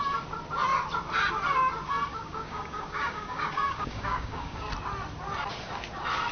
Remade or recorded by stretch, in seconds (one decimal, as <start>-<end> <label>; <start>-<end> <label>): 0.0-2.1 recorded; 2.1-4.7 remade; 4.7-6.3 recorded